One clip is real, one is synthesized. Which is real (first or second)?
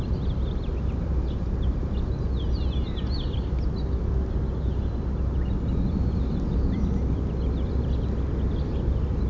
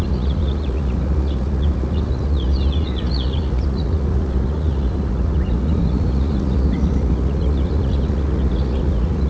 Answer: first